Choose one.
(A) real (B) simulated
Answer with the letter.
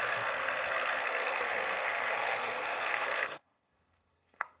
B